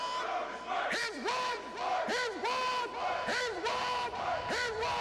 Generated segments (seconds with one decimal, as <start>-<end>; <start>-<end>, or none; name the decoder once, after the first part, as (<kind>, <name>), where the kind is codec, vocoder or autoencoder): 0.4-1.3 (vocoder, BigVGAN v2); 3.3-3.8